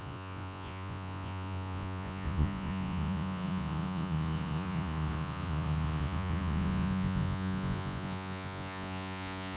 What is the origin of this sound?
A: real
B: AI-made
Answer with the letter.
B